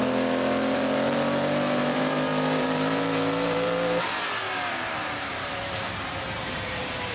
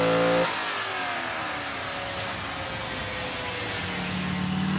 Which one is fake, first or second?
first